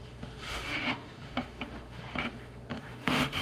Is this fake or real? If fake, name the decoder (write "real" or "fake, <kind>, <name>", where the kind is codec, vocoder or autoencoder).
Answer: fake, autoencoder, DAC-VAE